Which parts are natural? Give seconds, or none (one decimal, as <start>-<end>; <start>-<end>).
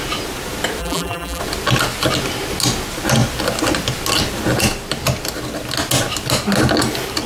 0.0-0.8; 1.4-7.3